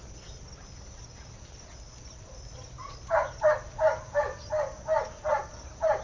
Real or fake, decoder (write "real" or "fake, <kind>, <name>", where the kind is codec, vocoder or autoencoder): real